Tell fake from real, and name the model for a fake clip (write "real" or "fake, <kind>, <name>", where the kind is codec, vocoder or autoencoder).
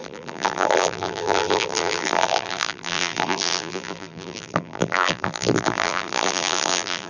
fake, vocoder, BigVGAN v2